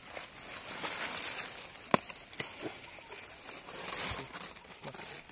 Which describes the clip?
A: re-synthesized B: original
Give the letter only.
B